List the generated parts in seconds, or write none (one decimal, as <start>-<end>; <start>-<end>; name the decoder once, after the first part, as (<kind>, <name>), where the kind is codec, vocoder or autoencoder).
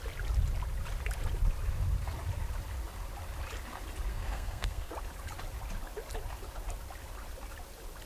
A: 4.1-4.9 (codec, SNAC)